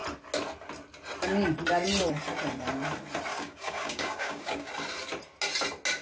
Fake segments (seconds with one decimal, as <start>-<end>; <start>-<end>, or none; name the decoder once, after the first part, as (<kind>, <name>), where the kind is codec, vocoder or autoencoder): 3.3-4.7 (codec, DAC)